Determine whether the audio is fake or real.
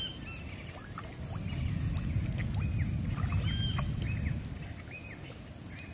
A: real